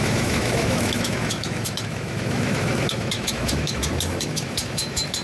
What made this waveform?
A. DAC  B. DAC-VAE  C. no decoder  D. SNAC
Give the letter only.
B